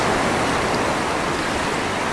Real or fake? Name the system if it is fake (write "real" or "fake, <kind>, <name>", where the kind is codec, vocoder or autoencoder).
real